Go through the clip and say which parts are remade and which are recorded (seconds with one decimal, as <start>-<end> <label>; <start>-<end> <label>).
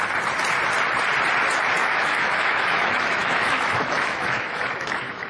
0.0-1.8 recorded; 1.8-5.3 remade